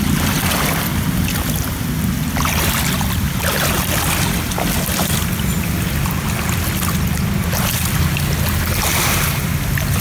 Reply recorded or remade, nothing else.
recorded